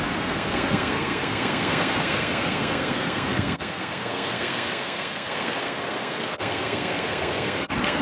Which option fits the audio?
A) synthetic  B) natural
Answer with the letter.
A